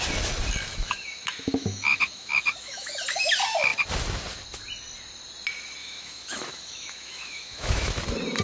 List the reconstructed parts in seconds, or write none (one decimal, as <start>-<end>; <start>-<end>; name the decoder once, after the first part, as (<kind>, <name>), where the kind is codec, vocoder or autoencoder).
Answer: 0.7-3.0 (autoencoder, DAC-VAE); 5.8-7.9